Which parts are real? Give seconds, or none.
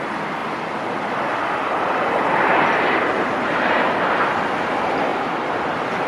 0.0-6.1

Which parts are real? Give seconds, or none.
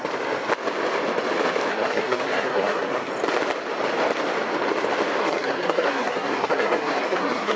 0.0-1.7; 3.1-5.2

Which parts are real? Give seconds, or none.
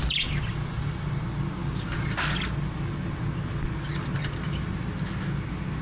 0.0-5.8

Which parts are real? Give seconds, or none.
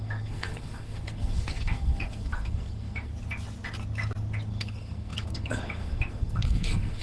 3.1-4.5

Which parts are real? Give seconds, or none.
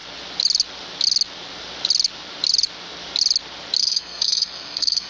0.0-3.8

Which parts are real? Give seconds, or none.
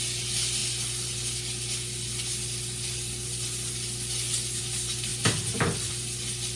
0.0-6.6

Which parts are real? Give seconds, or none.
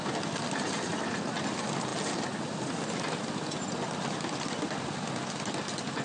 0.0-6.0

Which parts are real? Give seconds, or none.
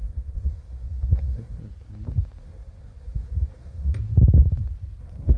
1.6-2.4; 3.9-5.0